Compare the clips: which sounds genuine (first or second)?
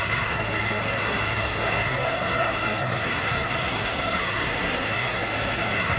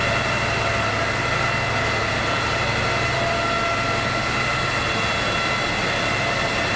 second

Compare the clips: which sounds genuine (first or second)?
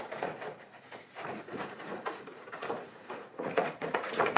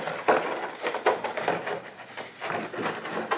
second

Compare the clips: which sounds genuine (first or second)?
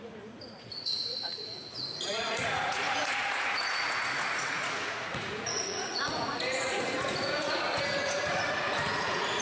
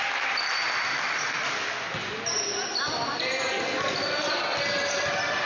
second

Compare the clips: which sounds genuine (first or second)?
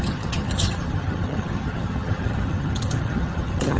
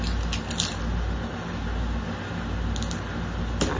second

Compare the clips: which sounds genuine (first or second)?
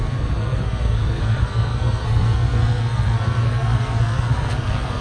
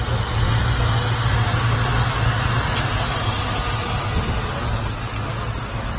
second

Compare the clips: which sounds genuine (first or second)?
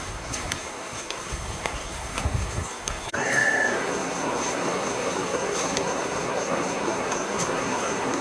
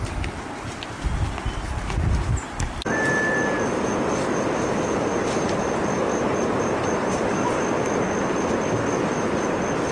second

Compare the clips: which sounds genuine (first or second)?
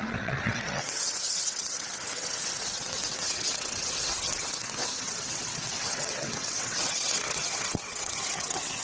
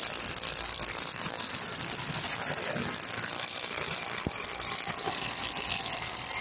second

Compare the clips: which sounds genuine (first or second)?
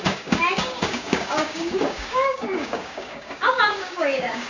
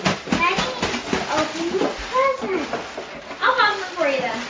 second